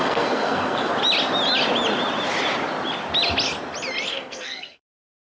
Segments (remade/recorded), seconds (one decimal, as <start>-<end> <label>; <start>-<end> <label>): 0.0-0.9 remade; 0.9-4.1 recorded; 4.1-5.3 remade